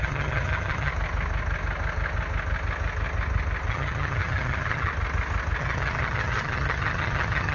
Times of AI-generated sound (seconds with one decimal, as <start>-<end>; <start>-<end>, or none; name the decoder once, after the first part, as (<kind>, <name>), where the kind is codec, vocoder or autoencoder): 0.0-0.9 (vocoder, HiFi-GAN); 3.7-4.9; 5.6-7.5